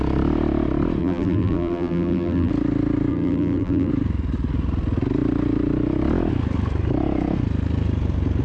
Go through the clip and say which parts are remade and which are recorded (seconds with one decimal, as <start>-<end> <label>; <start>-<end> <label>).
0.0-1.0 recorded; 1.0-2.5 remade; 2.5-3.1 recorded; 3.1-3.9 remade; 3.9-8.4 recorded